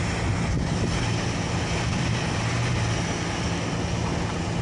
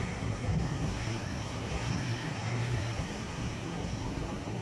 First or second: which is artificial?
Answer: second